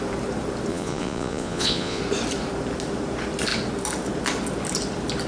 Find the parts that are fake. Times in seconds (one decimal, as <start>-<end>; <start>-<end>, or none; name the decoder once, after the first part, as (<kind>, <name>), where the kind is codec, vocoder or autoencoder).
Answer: 0.7-2.0 (vocoder, Vocos)